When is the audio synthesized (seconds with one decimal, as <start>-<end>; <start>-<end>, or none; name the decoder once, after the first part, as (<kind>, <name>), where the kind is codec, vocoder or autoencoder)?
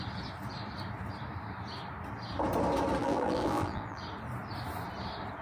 3.0-4.0 (vocoder, BigVGAN v2)